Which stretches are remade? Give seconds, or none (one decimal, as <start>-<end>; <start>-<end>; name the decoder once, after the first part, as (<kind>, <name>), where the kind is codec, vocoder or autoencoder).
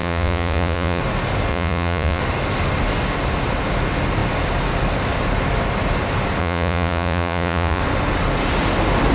0.0-1.0 (vocoder, Vocos); 1.5-2.2; 6.4-7.8